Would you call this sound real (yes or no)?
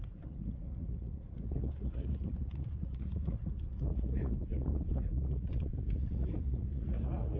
no